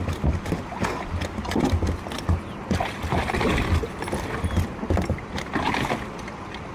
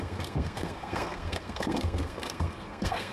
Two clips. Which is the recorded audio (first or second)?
first